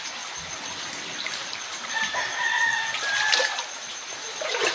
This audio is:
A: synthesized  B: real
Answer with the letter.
B